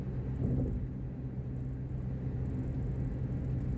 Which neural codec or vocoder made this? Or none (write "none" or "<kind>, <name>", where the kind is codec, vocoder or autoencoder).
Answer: none